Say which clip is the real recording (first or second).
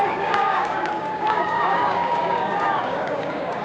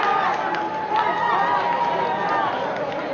second